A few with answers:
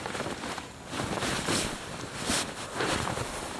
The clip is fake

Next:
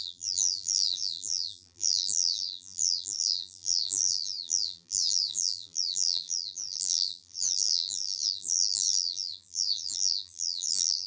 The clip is fake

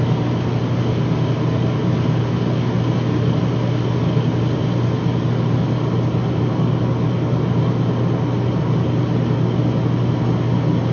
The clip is real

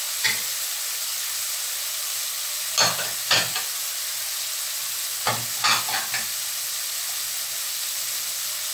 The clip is real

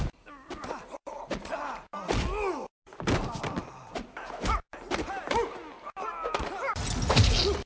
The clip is real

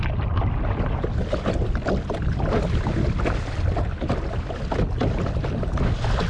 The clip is real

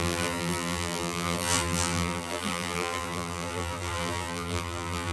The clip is fake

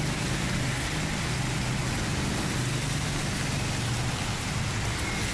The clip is real